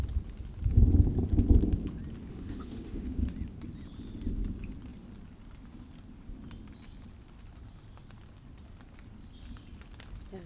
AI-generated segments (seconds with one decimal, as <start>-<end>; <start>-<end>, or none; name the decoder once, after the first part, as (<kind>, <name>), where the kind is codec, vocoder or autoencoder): 2.3-3.2 (autoencoder, DAC-VAE)